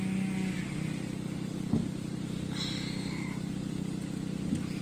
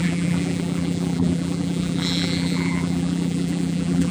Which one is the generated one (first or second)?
second